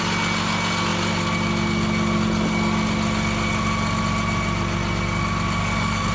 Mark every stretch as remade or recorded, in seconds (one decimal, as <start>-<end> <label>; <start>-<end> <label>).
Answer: 0.0-5.6 recorded; 5.6-6.1 remade